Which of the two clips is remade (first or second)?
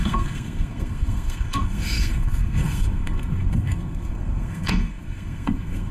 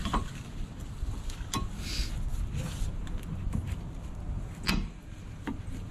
first